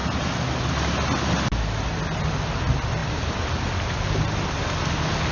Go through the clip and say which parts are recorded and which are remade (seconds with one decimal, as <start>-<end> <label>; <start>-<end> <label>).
0.0-5.3 recorded